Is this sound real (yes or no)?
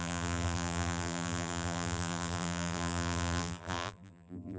no